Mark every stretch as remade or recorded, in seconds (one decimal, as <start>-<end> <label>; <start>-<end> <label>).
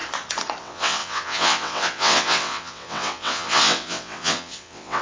0.0-0.6 recorded; 0.6-5.0 remade